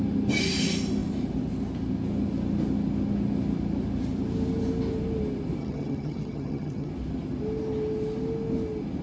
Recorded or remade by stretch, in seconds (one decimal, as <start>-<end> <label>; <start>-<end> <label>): 0.0-5.6 recorded; 5.6-6.9 remade; 6.9-9.0 recorded